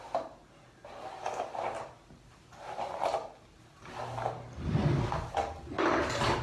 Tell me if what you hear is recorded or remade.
recorded